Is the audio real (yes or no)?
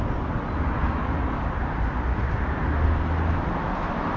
yes